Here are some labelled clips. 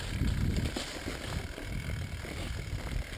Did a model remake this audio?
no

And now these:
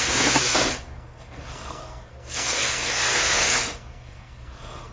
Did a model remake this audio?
yes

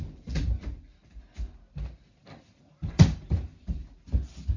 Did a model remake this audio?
no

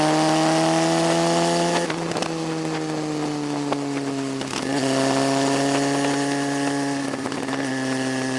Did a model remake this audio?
no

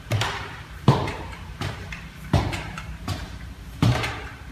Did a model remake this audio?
yes